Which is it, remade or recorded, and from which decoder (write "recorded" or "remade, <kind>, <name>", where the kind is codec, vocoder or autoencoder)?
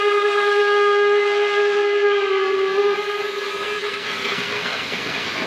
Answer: remade, codec, SNAC